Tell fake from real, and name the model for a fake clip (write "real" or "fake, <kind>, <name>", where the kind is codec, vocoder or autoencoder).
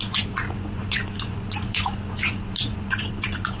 fake, vocoder, Vocos